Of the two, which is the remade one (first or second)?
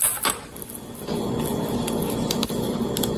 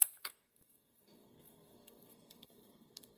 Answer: second